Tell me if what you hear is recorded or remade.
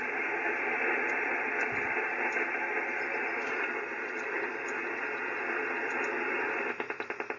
remade